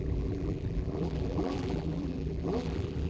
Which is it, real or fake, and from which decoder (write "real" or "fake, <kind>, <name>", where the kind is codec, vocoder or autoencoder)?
fake, vocoder, BigVGAN v2